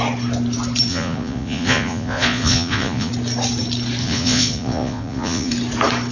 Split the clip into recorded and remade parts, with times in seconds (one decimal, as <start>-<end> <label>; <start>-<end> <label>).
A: 0.0-0.9 recorded; 0.9-3.1 remade; 3.1-4.0 recorded; 4.0-5.5 remade; 5.5-6.1 recorded